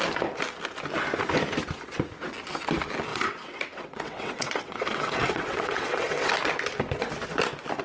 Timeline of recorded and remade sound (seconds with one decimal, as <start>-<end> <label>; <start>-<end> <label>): 0.0-3.1 recorded; 3.1-6.3 remade; 6.3-7.8 recorded